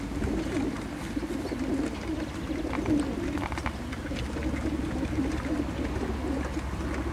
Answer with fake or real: real